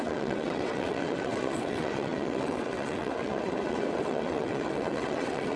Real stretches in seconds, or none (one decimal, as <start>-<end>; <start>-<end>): none